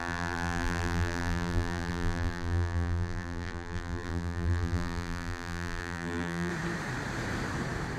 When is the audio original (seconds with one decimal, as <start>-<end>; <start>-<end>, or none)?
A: 6.5-8.0